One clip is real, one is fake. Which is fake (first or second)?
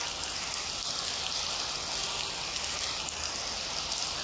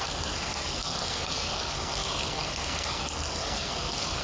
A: second